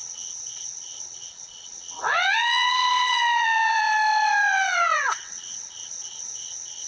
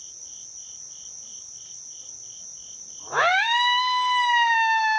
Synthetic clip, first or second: first